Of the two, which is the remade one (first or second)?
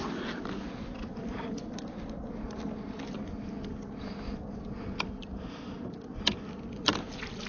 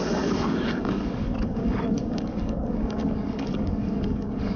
second